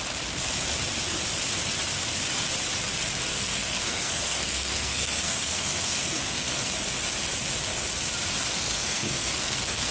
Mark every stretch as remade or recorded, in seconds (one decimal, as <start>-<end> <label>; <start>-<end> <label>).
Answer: 0.0-3.3 recorded; 3.3-6.7 remade; 6.7-8.4 recorded; 8.4-9.9 remade